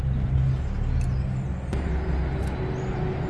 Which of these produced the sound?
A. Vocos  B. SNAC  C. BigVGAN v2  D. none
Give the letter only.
D